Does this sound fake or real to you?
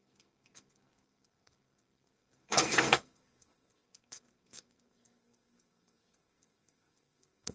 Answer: fake